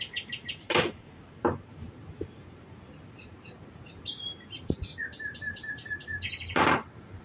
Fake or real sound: fake